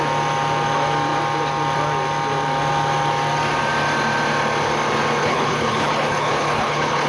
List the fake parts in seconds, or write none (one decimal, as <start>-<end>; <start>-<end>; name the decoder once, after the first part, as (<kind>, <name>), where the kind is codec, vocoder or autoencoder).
5.2-7.1 (codec, HILCodec)